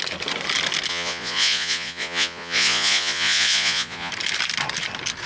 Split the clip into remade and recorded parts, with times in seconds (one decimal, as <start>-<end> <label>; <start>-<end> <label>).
0.0-0.9 recorded; 0.9-4.1 remade; 4.1-5.3 recorded